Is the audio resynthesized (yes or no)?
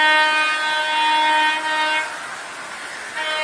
no